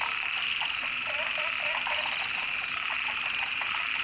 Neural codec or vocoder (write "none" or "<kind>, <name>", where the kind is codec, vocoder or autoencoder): none